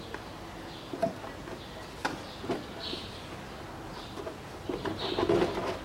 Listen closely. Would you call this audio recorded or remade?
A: recorded